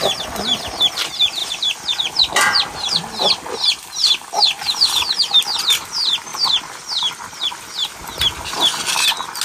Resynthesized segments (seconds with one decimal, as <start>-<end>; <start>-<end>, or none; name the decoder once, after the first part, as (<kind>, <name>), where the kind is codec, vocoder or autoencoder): 1.4-5.6 (vocoder, BigVGAN v2); 6.3-7.6